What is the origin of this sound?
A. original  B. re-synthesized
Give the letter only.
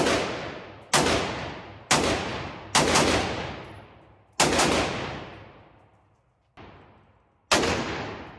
A